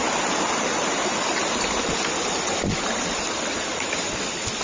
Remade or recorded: recorded